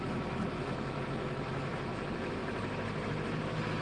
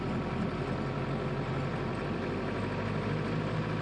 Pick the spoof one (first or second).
first